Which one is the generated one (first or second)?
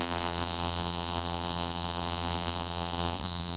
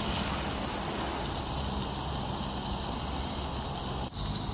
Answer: first